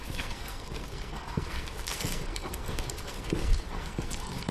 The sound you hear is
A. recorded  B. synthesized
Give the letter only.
B